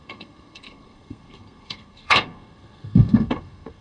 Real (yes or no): no